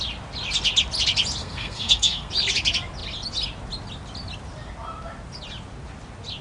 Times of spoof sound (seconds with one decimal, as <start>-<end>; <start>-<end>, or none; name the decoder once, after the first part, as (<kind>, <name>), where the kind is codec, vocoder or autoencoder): 1.4-2.3 (codec, SNAC)